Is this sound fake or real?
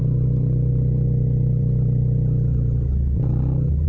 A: real